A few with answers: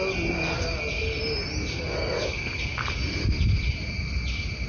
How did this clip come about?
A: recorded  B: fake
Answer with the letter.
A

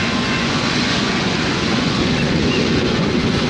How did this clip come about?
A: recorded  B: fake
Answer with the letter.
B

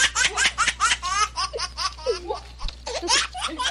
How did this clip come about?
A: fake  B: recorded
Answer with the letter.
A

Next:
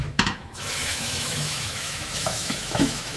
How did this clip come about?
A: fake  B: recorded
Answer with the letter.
A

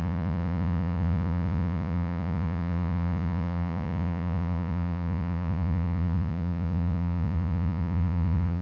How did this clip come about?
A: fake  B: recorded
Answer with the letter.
A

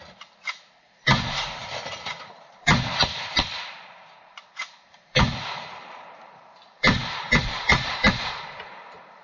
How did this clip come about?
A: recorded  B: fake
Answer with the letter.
B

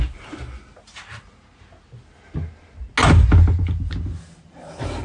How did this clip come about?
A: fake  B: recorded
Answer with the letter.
B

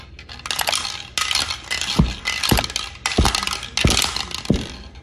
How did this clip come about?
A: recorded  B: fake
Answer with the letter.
A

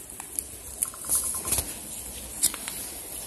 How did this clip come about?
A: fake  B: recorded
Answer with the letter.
B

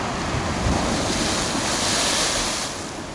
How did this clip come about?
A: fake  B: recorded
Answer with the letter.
B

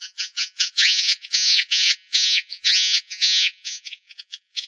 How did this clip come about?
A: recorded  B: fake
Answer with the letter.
B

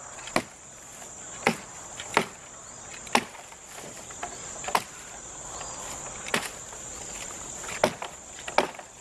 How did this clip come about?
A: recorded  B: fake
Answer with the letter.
A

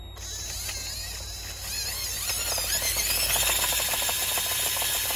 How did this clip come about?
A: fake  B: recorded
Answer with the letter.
B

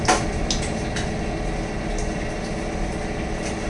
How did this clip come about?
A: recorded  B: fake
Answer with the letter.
A